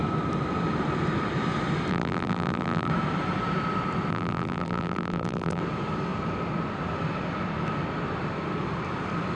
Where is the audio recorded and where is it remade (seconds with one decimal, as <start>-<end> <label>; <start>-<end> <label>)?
0.0-1.9 recorded; 1.9-2.9 remade; 2.9-4.1 recorded; 4.1-5.6 remade; 5.6-9.3 recorded